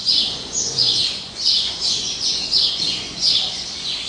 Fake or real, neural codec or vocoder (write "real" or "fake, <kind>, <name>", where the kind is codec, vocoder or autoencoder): fake, vocoder, Vocos